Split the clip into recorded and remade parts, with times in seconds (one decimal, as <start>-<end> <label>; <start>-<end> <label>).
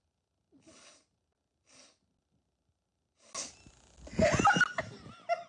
0.0-5.5 recorded